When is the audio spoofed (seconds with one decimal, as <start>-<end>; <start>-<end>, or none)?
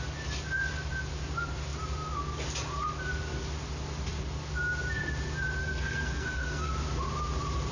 5.6-6.7